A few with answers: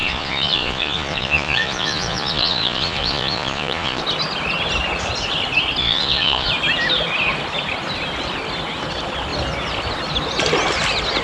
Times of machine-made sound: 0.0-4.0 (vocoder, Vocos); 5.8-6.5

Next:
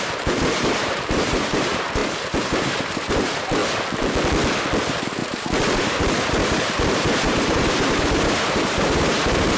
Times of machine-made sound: 0.0-3.6 (vocoder, BigVGAN v2); 4.8-9.6

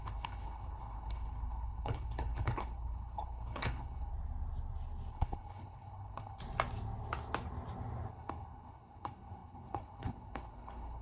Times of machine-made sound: 0.0-4.1 (codec, HILCodec); 5.1-6.4; 8.1-11.0

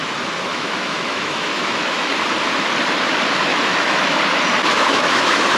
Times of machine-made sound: 0.5-2.1 (autoencoder, DAC-VAE); 3.5-4.2; 4.7-5.6

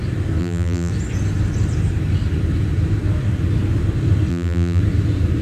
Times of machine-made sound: 0.4-0.9 (vocoder, BigVGAN v2); 4.3-4.8

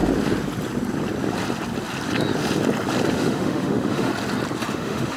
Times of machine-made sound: 3.1-4.1 (autoencoder, DAC-VAE); 4.7-5.2

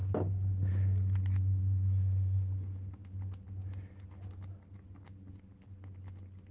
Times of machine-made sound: none

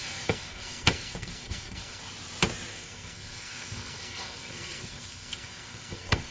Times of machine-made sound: 0.0-2.0 (codec, SNAC); 2.7-6.3